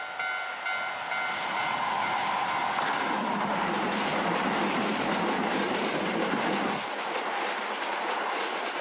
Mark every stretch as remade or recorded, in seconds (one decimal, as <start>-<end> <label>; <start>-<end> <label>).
0.0-8.8 recorded